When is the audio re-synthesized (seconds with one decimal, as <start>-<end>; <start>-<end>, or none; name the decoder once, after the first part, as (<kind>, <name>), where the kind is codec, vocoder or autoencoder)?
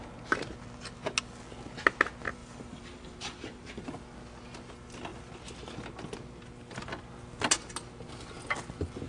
2.4-3.8 (vocoder, BigVGAN v2)